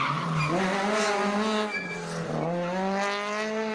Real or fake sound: real